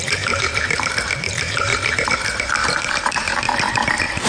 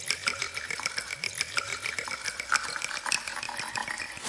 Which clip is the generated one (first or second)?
first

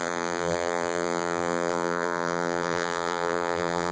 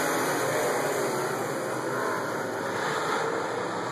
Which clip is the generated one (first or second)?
first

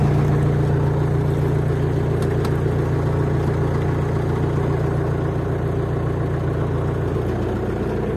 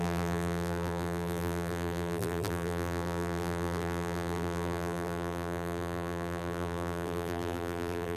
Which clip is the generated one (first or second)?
second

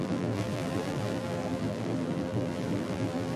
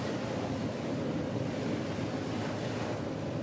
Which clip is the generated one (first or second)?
first